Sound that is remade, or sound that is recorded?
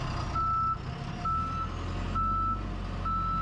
recorded